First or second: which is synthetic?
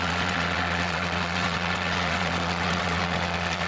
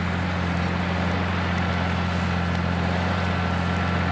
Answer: first